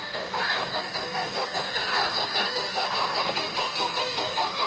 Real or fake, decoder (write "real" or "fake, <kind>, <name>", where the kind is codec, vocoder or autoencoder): fake, codec, DAC